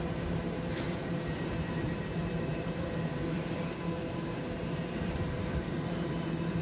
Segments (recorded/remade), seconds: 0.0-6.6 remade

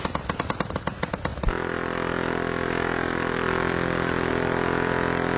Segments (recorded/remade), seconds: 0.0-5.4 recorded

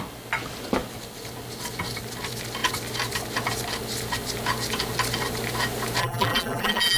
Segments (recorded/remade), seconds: 0.0-6.0 recorded; 6.0-7.0 remade